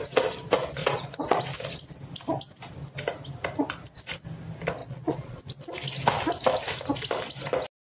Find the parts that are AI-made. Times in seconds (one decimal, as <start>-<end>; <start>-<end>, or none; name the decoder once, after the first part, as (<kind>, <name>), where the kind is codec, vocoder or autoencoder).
0.8-1.4 (vocoder, Vocos); 4.8-5.4